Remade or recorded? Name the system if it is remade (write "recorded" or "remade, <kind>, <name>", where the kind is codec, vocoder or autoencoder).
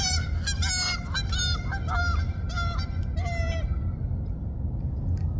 recorded